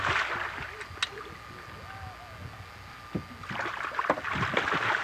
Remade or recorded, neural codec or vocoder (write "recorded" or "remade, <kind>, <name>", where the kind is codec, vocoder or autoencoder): recorded